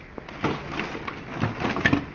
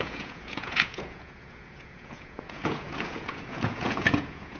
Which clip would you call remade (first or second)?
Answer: second